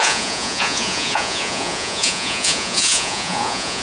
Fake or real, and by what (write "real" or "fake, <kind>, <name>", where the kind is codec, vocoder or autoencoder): fake, vocoder, Vocos